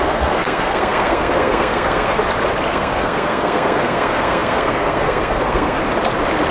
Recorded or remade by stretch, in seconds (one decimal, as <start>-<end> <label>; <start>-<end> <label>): 0.0-2.2 remade; 2.2-2.7 recorded; 2.7-5.8 remade; 5.8-6.5 recorded